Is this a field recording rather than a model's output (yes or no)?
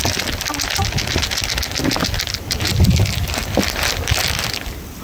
yes